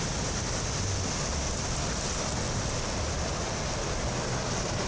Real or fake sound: real